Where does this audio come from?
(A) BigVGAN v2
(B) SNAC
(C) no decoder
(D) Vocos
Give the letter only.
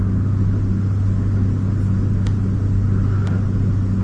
C